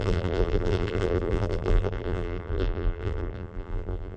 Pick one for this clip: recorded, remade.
remade